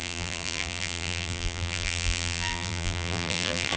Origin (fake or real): fake